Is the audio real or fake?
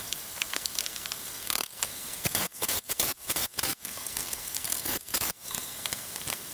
fake